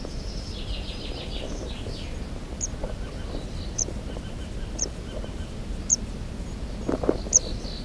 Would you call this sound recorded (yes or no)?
yes